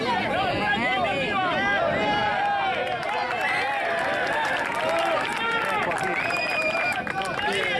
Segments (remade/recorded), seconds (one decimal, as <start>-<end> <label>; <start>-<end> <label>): 0.0-7.8 recorded